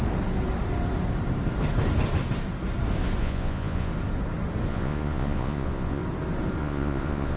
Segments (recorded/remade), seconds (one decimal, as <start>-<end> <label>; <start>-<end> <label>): 0.0-3.2 recorded; 3.2-3.9 remade; 3.9-4.7 recorded; 4.7-6.0 remade; 6.0-6.6 recorded; 6.6-7.4 remade